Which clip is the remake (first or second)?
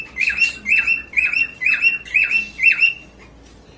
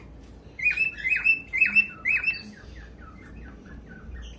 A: second